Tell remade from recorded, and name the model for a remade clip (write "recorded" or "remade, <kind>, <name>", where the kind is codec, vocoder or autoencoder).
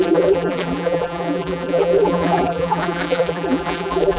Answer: remade, vocoder, BigVGAN v2